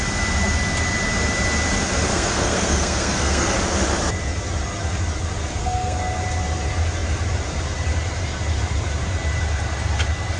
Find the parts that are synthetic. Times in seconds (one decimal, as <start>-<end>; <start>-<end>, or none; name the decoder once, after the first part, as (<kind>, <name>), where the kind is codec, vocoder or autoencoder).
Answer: 2.1-3.6 (codec, SNAC); 5.6-6.2